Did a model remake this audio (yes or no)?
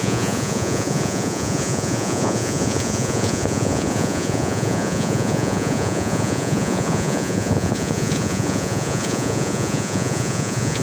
yes